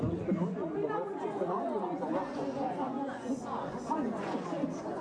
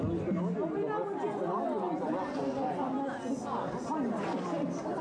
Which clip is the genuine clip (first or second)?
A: second